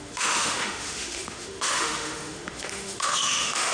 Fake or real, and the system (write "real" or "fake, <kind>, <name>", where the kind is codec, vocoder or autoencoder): fake, autoencoder, DAC-VAE